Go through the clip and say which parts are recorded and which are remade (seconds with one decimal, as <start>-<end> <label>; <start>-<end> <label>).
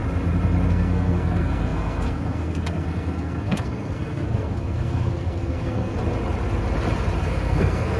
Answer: 0.0-0.7 recorded; 0.7-6.0 remade; 6.0-7.2 recorded; 7.2-8.0 remade